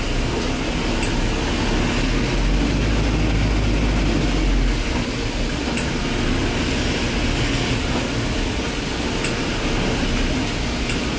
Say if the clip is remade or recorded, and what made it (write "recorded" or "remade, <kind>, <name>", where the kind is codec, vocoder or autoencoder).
recorded